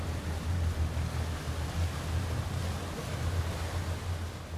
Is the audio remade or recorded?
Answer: recorded